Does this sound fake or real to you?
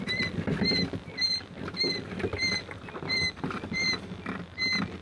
real